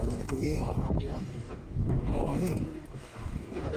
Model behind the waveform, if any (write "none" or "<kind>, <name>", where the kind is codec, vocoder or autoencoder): codec, DAC